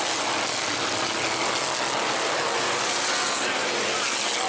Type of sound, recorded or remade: recorded